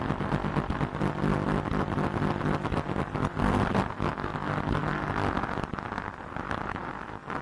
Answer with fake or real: real